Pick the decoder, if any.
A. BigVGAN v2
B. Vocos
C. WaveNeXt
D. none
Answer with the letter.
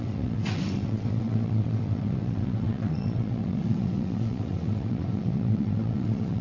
C